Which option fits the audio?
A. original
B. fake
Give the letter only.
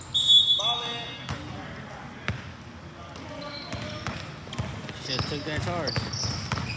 A